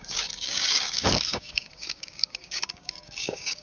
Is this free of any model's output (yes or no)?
no